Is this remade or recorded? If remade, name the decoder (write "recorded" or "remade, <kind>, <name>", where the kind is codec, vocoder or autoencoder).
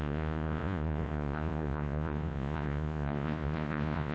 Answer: remade, vocoder, Vocos